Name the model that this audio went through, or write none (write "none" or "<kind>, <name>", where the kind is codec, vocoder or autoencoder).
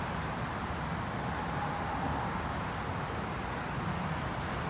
none